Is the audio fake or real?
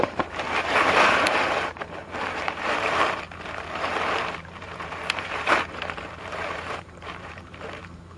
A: fake